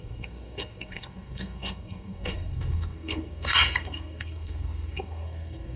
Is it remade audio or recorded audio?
remade